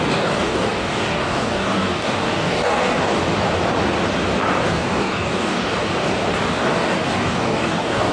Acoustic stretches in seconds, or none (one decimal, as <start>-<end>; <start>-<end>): 3.2-4.6; 5.8-6.4